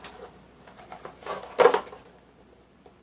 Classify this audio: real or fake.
real